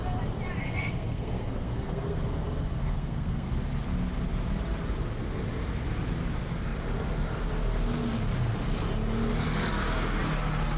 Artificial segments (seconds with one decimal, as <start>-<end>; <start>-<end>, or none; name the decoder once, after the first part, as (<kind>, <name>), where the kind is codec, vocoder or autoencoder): 0.6-2.2 (codec, SNAC); 2.8-3.5